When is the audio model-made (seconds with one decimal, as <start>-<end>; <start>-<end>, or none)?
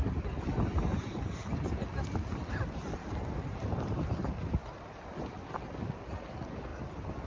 none